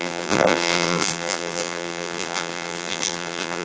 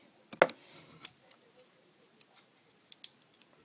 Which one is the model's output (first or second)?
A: first